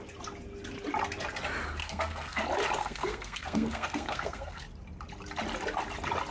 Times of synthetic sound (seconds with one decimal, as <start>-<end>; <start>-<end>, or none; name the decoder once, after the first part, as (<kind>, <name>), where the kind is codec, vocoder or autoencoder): 1.8-2.4 (codec, SNAC); 2.8-4.6